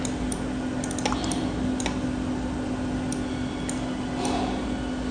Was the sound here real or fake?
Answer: real